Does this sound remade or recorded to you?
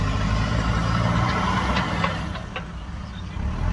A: recorded